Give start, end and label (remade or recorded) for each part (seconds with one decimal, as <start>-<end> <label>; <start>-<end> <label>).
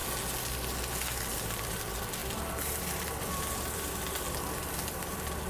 0.0-1.3 recorded; 1.3-5.5 remade